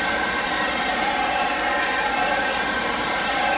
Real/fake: fake